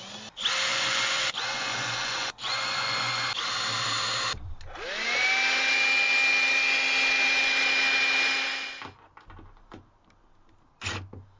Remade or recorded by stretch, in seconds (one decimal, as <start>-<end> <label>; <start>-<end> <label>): 0.0-0.7 recorded; 0.7-3.3 remade; 3.3-11.4 recorded